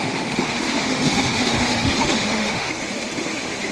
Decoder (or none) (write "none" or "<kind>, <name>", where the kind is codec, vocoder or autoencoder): autoencoder, DAC-VAE